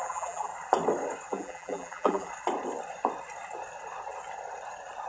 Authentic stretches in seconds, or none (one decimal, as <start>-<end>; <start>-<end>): 0.5-1.3; 2.3-5.1